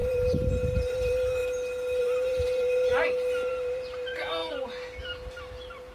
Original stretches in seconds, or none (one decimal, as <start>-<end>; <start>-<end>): 1.4-2.0; 2.9-3.5; 4.4-5.0

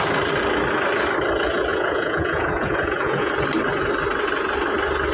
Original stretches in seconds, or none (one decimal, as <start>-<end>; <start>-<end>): 0.0-1.7; 3.3-5.1

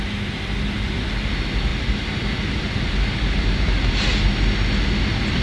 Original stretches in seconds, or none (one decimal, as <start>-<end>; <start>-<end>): 0.0-1.7; 3.9-5.4